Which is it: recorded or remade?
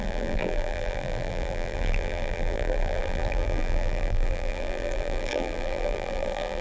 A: remade